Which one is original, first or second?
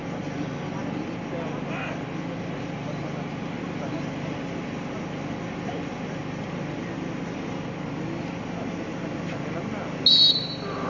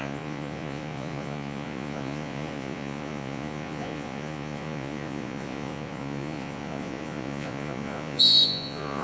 first